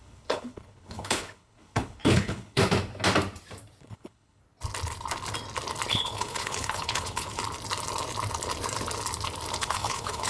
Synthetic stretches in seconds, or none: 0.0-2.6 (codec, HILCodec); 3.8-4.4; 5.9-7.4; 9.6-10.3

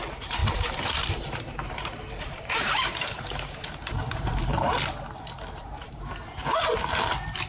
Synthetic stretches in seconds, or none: 0.0-4.5 (vocoder, BigVGAN v2); 5.6-6.4

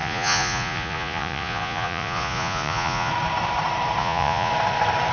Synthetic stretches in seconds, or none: 0.0-3.1 (vocoder, Vocos); 4.0-4.5

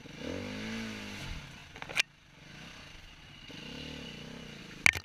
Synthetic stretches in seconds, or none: none

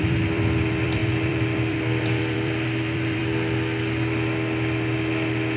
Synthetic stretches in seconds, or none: 0.0-3.2 (vocoder, BigVGAN v2)

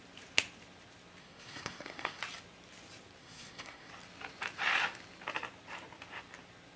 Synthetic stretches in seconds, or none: 1.2-2.2 (codec, SNAC); 3.2-3.9

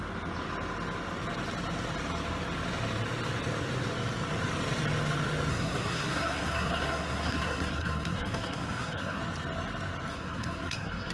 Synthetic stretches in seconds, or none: 5.5-9.2 (codec, SNAC); 10.1-11.1

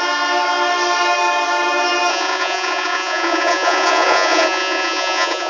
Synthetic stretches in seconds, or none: 2.1-5.5 (vocoder, Vocos)